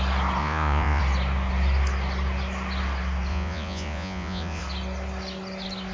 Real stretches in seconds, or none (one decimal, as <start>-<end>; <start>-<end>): 0.0-0.4; 1.0-3.3; 4.6-5.9